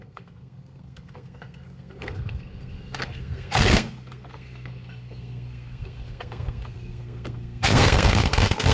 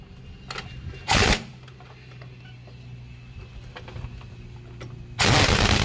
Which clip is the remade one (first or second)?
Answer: first